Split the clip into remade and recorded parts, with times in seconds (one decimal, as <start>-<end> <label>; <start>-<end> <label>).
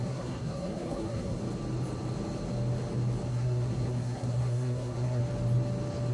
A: 0.0-1.4 remade; 1.4-3.3 recorded; 3.3-5.2 remade; 5.2-6.1 recorded